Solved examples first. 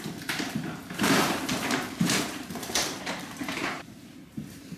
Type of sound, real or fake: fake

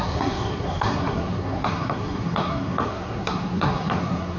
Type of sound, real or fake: fake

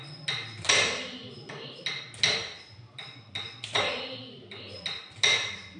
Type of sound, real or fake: real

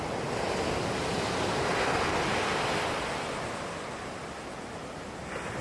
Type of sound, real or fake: real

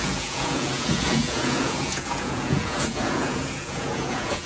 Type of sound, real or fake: fake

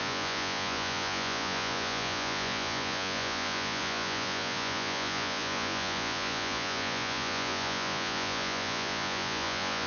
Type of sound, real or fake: fake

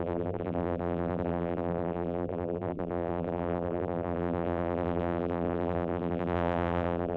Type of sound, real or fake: fake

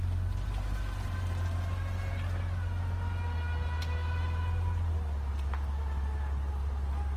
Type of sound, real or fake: real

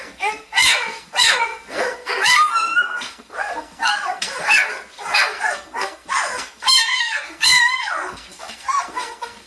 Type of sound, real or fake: fake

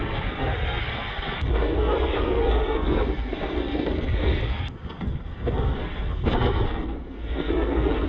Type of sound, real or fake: fake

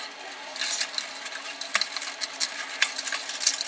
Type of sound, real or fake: real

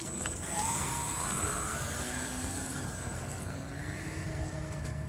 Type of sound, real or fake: fake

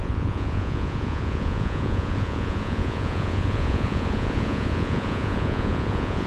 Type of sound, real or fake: fake